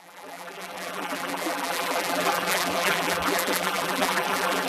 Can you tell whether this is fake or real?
fake